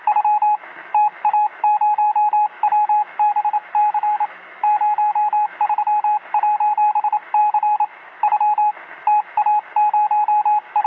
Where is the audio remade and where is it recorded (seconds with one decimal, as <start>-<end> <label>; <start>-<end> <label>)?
0.0-0.7 recorded; 0.7-3.3 remade; 3.3-3.8 recorded; 3.8-5.6 remade; 5.6-10.9 recorded